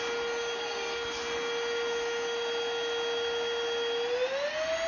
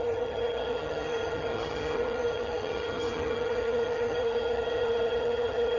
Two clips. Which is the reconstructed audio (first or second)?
second